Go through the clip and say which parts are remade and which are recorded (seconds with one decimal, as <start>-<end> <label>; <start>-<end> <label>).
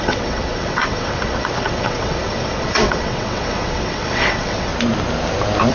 0.0-4.7 remade; 4.7-5.7 recorded